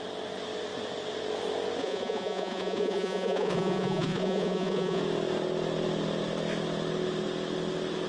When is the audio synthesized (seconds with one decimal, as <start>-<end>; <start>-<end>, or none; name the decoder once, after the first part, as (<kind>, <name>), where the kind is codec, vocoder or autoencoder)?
1.8-5.0 (vocoder, Vocos)